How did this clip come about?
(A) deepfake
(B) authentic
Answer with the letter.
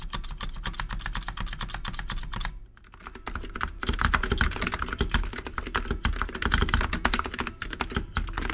B